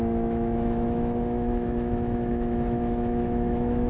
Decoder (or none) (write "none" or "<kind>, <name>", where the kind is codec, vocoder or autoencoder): autoencoder, DAC-VAE